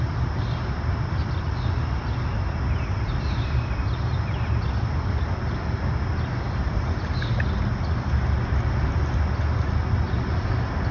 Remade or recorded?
recorded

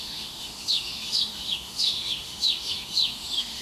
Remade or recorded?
remade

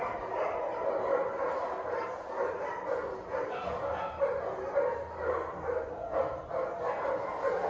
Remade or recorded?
recorded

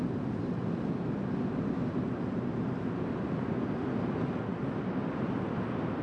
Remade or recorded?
recorded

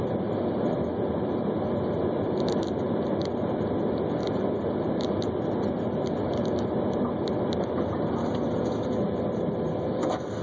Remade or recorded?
recorded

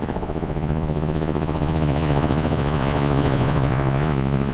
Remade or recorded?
remade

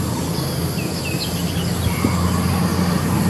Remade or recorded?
recorded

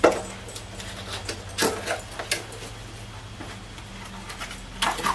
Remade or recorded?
recorded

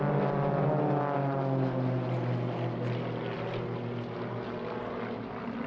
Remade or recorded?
recorded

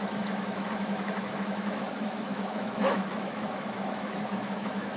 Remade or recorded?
remade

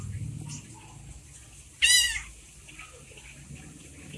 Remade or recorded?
recorded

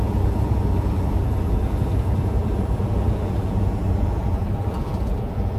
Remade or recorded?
remade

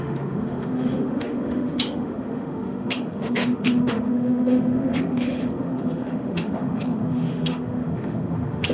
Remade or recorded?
remade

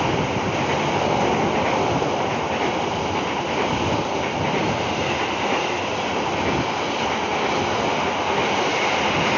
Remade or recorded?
recorded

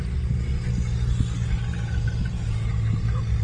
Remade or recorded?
recorded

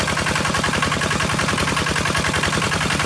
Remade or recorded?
recorded